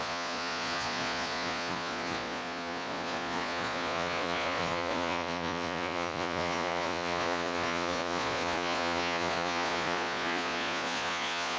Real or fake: fake